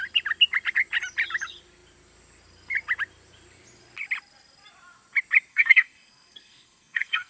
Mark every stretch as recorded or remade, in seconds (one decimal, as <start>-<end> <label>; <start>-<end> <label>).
0.0-5.5 recorded; 5.5-7.3 remade